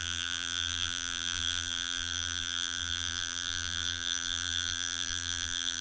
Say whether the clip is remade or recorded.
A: remade